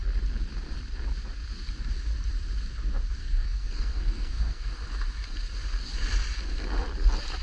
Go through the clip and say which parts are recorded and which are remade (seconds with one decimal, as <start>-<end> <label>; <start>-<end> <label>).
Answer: 0.0-3.2 recorded; 3.2-4.7 remade; 4.7-7.4 recorded

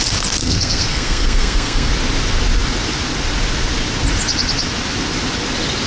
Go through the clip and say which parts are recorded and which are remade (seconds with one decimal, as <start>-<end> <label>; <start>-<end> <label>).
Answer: 0.0-0.4 recorded; 0.4-1.9 remade; 1.9-5.9 recorded

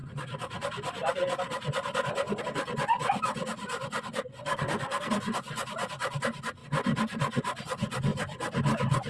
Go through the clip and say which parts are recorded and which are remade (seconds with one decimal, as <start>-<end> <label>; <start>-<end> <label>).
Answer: 0.0-4.5 recorded; 4.5-5.1 remade; 5.1-9.1 recorded

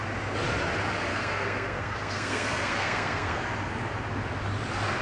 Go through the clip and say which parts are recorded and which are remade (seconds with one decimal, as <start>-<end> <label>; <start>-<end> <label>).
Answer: 0.0-1.1 recorded; 1.1-3.4 remade; 3.4-5.0 recorded